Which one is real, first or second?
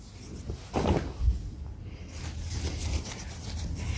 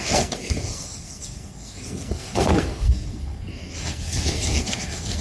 first